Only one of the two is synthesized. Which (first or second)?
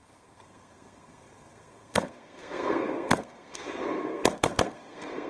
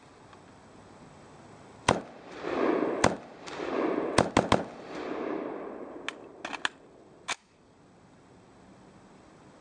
first